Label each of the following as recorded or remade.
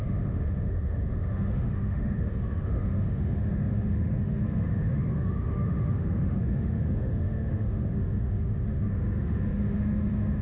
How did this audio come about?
remade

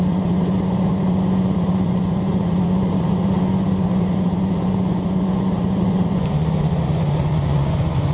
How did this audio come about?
remade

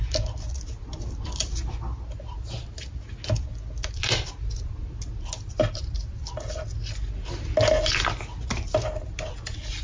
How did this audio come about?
recorded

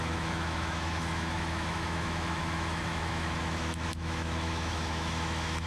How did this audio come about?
remade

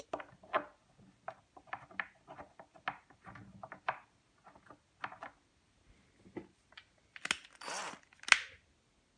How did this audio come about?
recorded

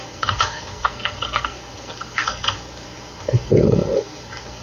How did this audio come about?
remade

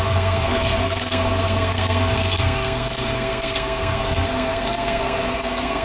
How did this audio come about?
remade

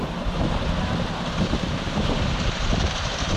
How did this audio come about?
remade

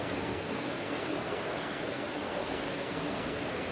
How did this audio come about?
remade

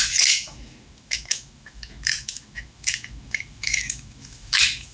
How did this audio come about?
remade